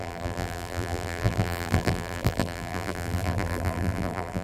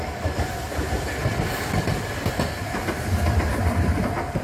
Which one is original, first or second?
second